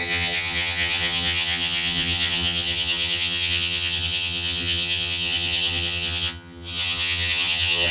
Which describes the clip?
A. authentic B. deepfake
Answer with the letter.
B